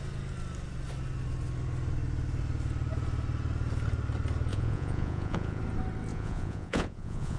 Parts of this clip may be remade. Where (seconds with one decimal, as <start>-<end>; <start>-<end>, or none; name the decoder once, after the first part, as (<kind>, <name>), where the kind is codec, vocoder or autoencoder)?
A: 4.5-5.6 (vocoder, Vocos); 6.1-7.4